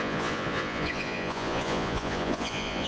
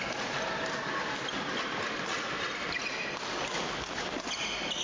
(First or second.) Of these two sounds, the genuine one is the second